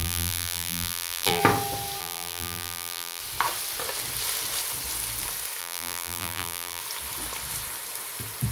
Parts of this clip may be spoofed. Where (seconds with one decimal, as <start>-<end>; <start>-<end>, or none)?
0.0-1.4; 2.0-3.2; 5.6-6.8

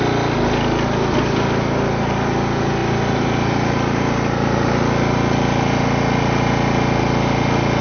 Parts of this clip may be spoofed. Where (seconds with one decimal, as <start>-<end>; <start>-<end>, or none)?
none

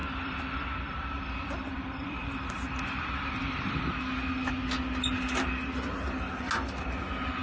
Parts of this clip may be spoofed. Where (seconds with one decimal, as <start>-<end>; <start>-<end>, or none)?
0.0-4.0

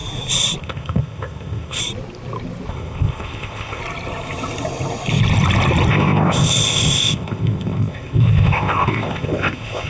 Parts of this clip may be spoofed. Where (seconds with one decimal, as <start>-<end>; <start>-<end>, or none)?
0.6-1.8; 2.7-3.8; 5.9-9.9

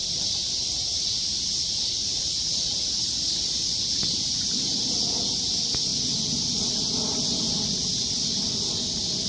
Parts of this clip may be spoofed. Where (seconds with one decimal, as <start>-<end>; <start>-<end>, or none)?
0.0-5.0

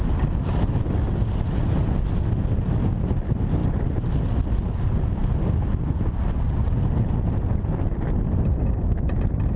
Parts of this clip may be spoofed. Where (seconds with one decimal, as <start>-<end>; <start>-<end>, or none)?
none